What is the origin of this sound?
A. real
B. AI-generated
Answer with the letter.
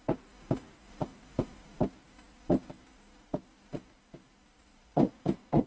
A